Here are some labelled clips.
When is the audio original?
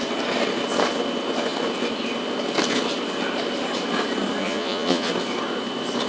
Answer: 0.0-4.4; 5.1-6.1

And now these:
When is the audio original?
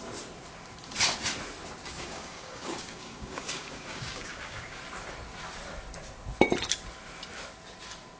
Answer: 0.0-1.8; 4.8-8.2